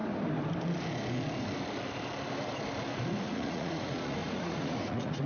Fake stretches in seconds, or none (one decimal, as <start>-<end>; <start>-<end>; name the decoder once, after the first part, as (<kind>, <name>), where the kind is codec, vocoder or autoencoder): 3.2-5.3 (vocoder, Vocos)